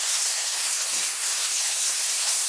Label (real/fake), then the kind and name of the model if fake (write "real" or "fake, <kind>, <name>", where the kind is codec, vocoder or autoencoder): fake, codec, SNAC